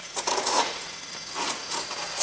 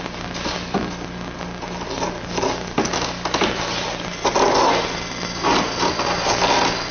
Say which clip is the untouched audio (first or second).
second